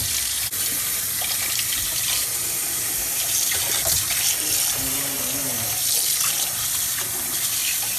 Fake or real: real